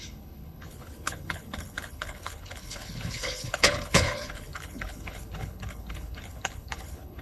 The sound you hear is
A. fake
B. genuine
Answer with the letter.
A